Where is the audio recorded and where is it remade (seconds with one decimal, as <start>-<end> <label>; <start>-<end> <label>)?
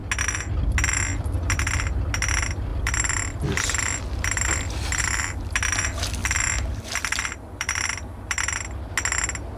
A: 0.0-1.1 recorded; 1.1-2.0 remade; 2.0-2.7 recorded; 2.7-5.0 remade; 5.0-6.2 recorded; 6.2-8.8 remade; 8.8-9.6 recorded